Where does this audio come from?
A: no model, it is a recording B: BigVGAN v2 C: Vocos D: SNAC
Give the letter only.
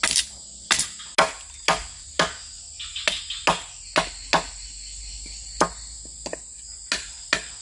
A